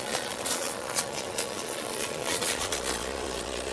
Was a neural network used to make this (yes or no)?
yes